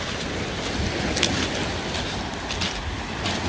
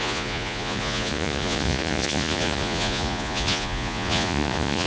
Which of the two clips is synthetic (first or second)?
second